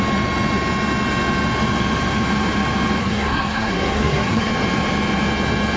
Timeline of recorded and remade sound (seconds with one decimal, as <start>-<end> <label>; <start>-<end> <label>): 0.0-3.0 recorded; 3.0-4.5 remade; 4.5-5.8 recorded